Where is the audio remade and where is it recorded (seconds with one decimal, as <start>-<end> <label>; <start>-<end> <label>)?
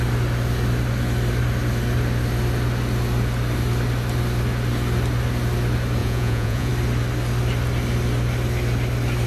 0.0-6.0 recorded; 6.0-6.7 remade; 6.7-9.3 recorded